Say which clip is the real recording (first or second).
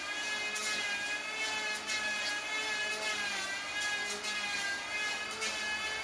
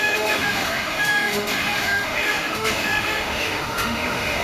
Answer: first